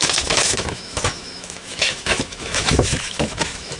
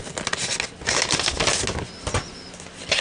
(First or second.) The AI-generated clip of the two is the first